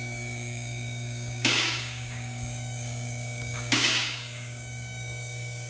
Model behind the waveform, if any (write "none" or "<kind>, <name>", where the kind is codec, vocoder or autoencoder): codec, DAC